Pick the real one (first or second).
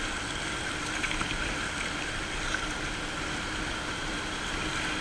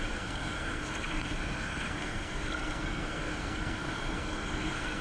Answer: first